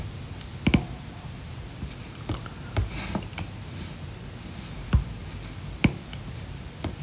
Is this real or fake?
real